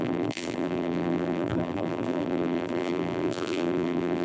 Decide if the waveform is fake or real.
fake